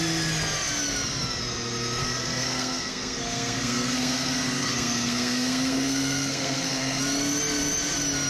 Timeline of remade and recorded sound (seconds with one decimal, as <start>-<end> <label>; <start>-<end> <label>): 0.0-2.0 recorded; 2.0-7.0 remade; 7.0-8.3 recorded